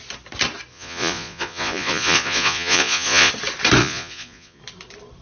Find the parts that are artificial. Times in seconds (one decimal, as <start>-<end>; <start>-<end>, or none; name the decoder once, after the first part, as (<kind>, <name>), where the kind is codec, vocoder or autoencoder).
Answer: 0.7-3.3 (vocoder, Vocos); 3.8-4.6

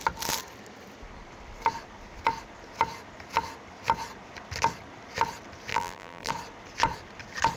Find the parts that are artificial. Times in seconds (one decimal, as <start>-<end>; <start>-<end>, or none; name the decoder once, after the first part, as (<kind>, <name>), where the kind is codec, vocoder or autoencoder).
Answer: 5.7-6.3 (vocoder, BigVGAN v2)